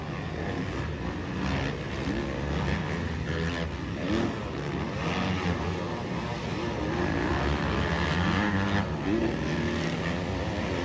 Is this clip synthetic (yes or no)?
no